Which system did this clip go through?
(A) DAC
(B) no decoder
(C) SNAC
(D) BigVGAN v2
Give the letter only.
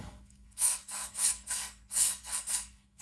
C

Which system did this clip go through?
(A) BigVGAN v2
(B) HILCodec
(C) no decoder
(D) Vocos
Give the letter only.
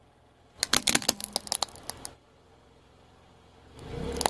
C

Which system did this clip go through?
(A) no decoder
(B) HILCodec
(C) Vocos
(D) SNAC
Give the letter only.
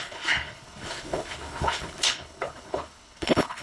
B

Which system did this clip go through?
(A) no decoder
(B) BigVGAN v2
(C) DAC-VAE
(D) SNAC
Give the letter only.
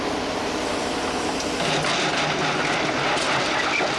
A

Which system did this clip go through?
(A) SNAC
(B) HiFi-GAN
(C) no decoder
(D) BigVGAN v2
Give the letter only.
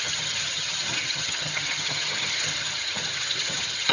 B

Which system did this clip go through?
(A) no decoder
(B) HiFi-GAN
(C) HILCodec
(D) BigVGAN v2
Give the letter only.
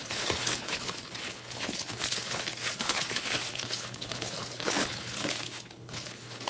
C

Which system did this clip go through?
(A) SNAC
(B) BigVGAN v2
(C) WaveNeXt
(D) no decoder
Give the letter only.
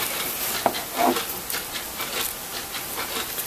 D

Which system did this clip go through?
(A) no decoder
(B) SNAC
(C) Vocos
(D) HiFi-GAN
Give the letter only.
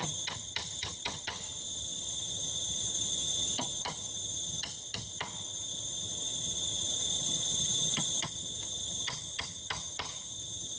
D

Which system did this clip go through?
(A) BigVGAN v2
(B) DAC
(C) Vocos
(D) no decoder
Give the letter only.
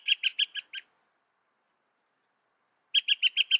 D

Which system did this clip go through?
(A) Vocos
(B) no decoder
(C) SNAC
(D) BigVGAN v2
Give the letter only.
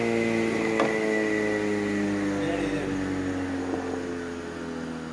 B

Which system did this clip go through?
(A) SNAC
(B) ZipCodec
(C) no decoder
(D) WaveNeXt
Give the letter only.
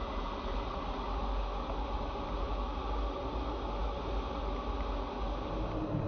C